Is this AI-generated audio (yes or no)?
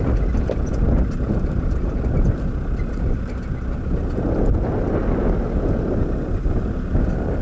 no